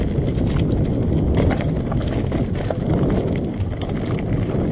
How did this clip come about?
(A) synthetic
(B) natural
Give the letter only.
B